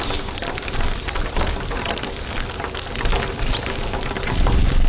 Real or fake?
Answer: real